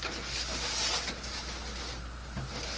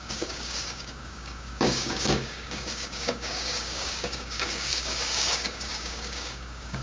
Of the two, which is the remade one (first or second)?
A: second